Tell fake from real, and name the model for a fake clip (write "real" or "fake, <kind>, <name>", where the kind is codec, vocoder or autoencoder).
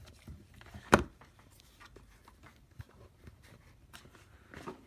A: fake, vocoder, BigVGAN v2